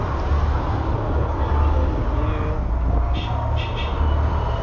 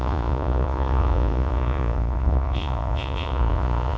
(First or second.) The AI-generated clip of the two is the second